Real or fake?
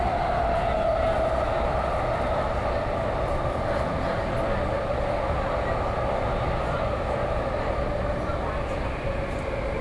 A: real